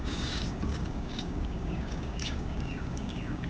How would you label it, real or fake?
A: fake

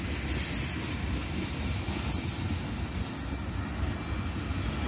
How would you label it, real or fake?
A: real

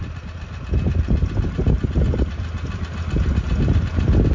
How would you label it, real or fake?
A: real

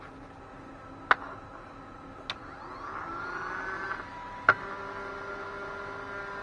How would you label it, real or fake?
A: real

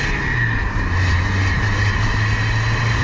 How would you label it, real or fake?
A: real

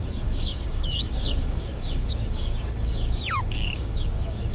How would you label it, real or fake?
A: fake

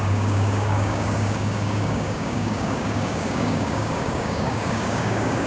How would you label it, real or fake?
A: fake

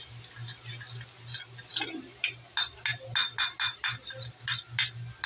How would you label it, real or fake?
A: real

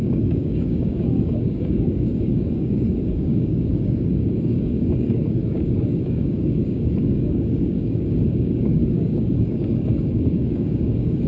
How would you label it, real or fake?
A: fake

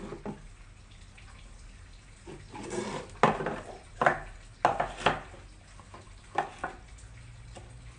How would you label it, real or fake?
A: real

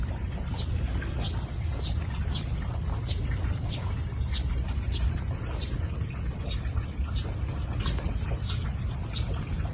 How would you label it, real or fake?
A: real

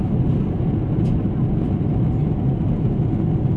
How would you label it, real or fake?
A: real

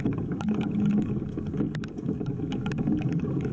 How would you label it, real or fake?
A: fake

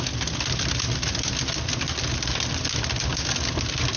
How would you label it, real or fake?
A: real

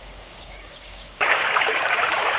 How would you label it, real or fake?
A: fake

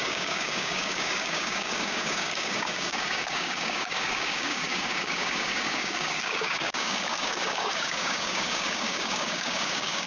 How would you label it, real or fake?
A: fake